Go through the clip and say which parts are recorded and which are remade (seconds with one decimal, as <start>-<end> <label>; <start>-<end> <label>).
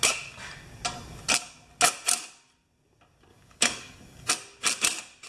0.0-3.3 recorded; 3.3-4.3 remade; 4.3-5.3 recorded